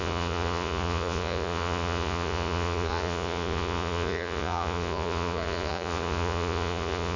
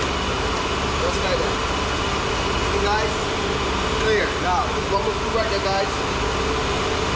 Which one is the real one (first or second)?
second